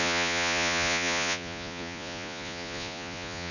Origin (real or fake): fake